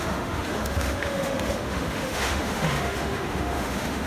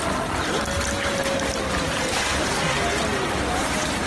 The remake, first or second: first